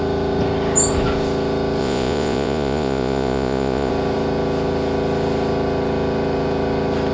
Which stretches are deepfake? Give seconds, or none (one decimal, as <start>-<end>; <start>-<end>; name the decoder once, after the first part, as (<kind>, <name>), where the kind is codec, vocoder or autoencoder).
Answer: 1.8-3.9 (vocoder, Vocos)